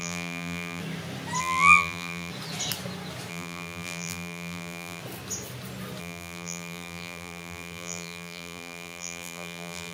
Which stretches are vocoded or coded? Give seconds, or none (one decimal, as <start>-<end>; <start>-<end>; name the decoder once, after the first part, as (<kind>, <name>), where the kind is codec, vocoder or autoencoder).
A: 0.0-0.8 (vocoder, BigVGAN v2); 1.4-2.3; 3.3-5.0; 6.0-9.9